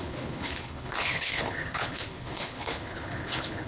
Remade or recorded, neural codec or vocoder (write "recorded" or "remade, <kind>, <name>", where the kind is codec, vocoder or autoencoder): remade, codec, HILCodec